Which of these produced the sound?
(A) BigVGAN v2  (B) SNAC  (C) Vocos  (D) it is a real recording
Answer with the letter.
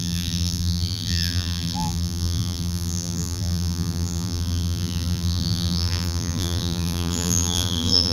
A